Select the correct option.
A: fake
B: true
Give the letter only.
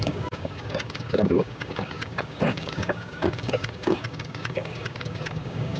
A